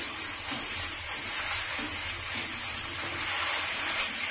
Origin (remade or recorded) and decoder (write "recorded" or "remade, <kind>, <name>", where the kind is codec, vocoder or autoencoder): remade, vocoder, BigVGAN v2